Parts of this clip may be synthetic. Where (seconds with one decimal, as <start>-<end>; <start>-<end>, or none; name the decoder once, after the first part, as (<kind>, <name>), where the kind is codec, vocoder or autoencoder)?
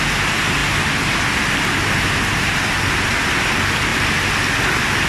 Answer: none